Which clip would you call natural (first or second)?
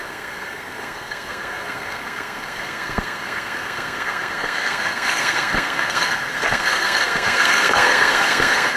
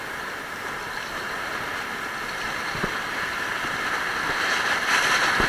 second